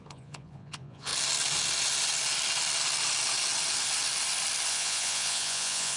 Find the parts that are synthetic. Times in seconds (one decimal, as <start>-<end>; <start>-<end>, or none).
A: 0.0-1.1; 4.7-6.0